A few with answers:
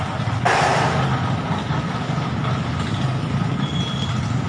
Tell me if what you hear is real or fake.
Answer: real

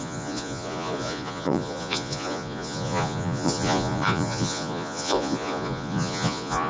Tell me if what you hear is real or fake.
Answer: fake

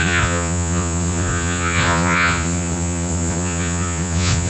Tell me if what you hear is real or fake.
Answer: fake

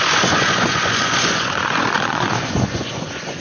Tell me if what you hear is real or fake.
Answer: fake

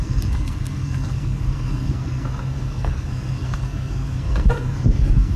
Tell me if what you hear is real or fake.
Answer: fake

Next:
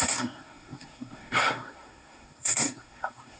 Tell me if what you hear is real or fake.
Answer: fake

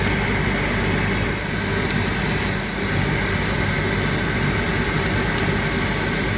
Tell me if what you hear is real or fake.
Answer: real